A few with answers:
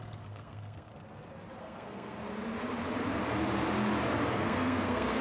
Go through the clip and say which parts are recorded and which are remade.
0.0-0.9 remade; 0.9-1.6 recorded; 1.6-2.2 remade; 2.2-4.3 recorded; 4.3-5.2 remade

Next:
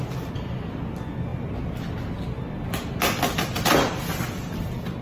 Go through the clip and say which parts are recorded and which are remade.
0.0-5.0 recorded

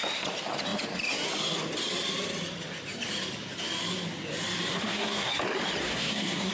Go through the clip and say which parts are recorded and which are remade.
0.0-4.7 recorded; 4.7-5.3 remade; 5.3-5.8 recorded; 5.8-6.5 remade

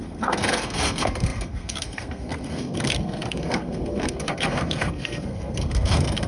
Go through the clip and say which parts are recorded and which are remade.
0.0-6.3 remade